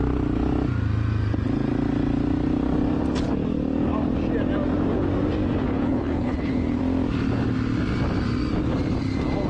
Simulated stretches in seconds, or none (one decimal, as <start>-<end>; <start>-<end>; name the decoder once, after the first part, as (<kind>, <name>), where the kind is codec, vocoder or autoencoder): 5.8-6.8 (codec, HILCodec)